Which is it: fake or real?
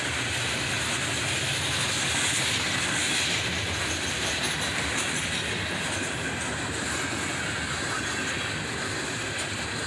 real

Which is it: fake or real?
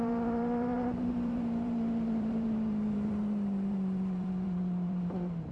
fake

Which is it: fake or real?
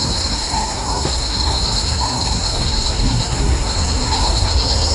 fake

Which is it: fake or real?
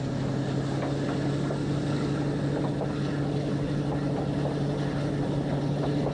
real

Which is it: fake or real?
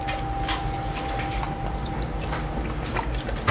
real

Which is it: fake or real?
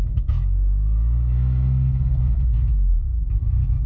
fake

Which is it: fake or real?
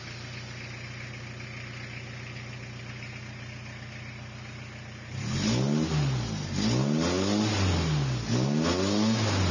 real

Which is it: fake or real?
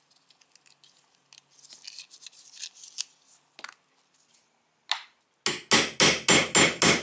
real